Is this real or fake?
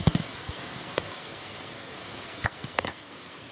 fake